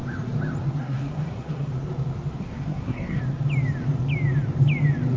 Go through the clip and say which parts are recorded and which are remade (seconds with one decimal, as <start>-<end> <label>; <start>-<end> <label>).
0.0-0.8 recorded; 0.8-1.7 remade; 1.7-2.4 recorded; 2.4-3.2 remade; 3.2-5.2 recorded